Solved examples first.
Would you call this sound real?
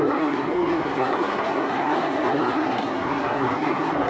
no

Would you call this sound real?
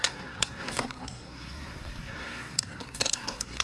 no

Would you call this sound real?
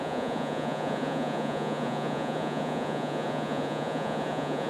no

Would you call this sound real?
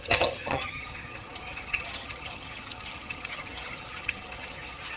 no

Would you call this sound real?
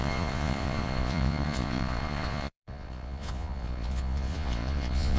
no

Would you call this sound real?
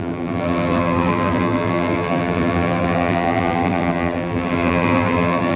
no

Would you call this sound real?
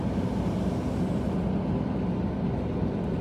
yes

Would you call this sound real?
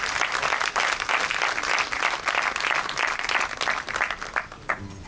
yes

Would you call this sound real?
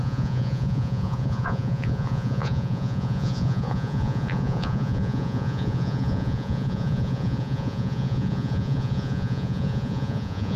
no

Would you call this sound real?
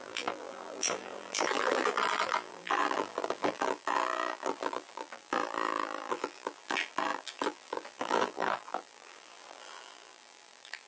no